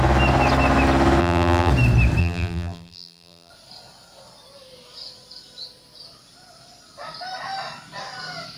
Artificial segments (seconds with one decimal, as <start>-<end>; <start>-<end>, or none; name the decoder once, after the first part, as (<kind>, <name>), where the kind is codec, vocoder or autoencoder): 1.2-1.7 (vocoder, BigVGAN v2); 2.2-3.5